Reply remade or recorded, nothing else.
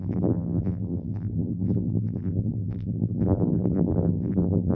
remade